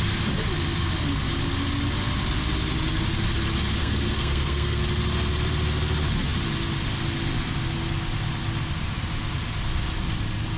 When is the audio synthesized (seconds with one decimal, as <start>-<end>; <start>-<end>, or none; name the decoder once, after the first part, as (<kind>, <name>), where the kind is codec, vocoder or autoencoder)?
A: 3.8-4.8 (codec, SNAC)